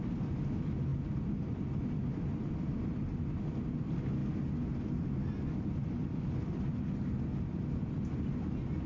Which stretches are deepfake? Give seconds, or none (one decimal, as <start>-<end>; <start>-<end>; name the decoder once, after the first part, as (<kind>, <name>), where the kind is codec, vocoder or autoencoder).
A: none